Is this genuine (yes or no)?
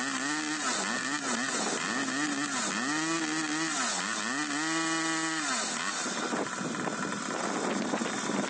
yes